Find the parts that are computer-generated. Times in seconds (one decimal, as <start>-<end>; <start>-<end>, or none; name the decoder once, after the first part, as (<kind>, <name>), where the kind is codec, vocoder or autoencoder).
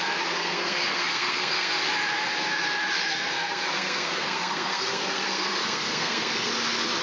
0.4-1.8 (codec, SNAC); 3.0-6.5